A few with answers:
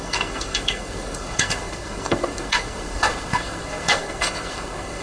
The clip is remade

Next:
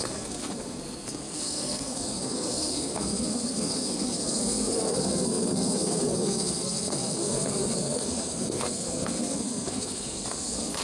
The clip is remade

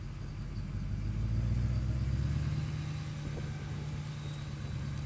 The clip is recorded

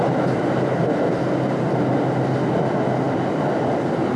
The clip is recorded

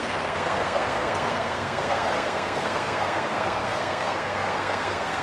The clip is remade